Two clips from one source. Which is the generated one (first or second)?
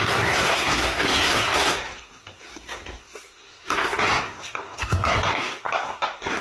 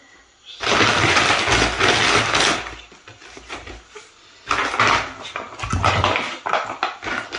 first